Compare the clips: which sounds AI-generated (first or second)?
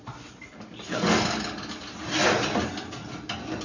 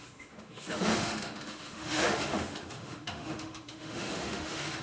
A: second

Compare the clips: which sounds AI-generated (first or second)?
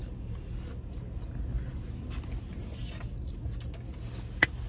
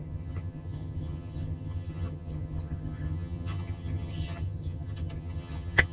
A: second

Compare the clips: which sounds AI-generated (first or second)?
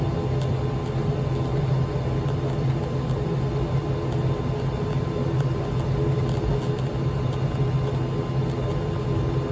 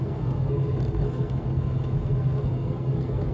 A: second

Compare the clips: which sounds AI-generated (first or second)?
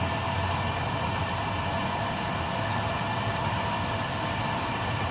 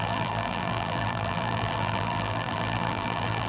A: second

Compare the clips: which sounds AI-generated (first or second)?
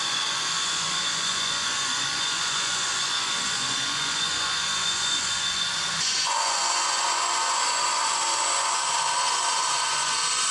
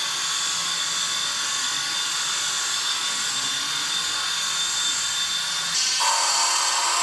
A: first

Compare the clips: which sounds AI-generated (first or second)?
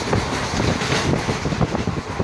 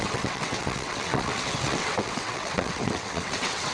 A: second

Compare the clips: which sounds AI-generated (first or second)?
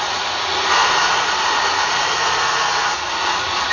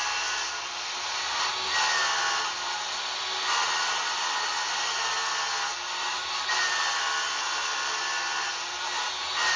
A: first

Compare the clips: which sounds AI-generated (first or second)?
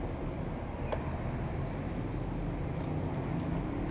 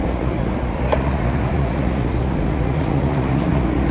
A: second